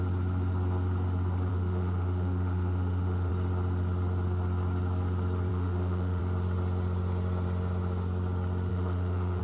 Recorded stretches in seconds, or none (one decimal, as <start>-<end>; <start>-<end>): 0.0-1.5; 3.3-5.5; 6.2-8.7